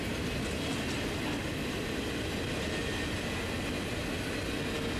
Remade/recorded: recorded